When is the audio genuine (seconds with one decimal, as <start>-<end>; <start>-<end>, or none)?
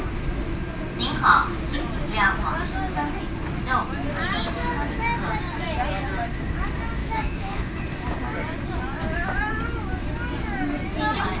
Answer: 0.0-7.0; 7.8-11.4